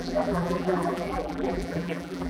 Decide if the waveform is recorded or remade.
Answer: remade